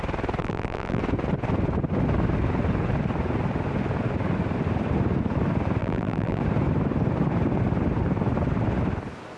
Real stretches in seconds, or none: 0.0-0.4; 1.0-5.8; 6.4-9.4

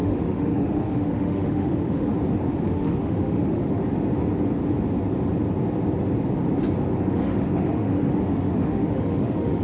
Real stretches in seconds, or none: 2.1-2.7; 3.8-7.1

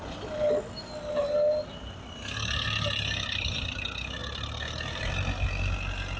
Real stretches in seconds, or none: 0.0-6.2

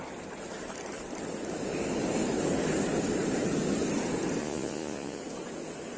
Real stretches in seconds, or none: 0.0-4.4; 5.2-6.0

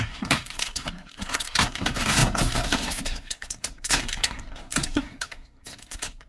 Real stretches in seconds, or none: none